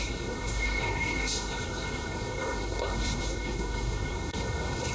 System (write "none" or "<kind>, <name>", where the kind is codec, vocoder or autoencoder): codec, SNAC